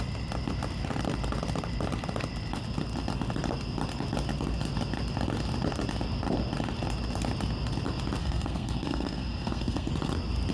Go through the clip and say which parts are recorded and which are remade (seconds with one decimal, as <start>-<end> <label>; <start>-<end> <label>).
0.0-8.2 recorded; 8.2-9.9 remade; 9.9-10.5 recorded